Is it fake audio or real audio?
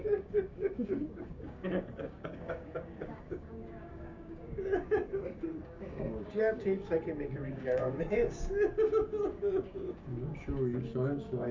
fake